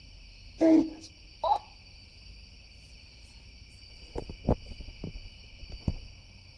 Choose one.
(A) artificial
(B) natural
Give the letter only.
B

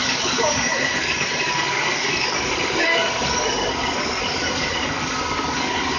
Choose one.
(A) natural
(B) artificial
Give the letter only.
B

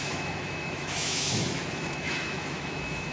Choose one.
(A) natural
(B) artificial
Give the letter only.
B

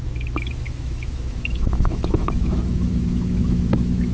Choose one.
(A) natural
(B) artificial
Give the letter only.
B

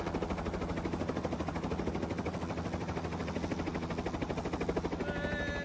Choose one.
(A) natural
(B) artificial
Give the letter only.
A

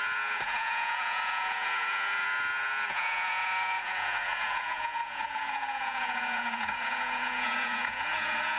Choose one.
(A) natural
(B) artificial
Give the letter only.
B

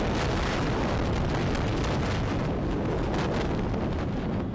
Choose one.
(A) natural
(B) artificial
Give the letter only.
A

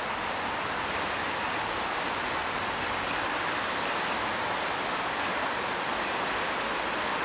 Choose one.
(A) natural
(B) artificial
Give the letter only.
A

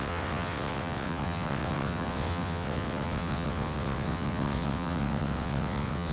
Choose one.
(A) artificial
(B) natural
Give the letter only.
A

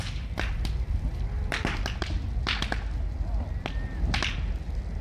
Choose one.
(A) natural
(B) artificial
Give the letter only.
A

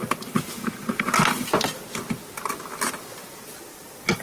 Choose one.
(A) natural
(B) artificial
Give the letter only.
A